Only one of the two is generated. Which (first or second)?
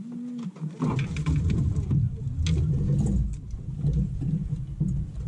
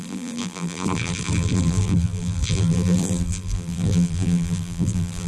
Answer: second